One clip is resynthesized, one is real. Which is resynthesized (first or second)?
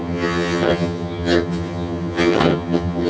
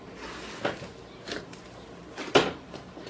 first